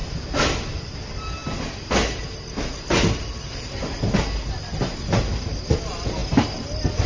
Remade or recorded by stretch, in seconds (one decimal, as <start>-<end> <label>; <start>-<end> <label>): 0.0-7.1 recorded